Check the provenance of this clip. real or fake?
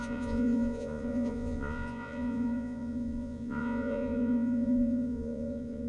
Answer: fake